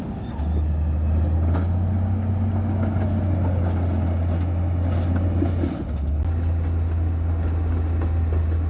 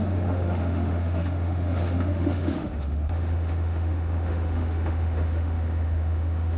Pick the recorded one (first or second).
first